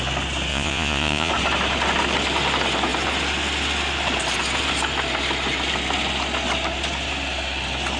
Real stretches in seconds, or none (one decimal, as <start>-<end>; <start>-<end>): 0.0-0.5; 1.3-8.0